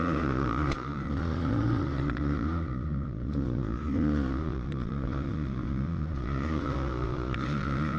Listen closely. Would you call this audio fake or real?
fake